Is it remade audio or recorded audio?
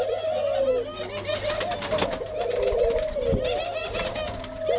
recorded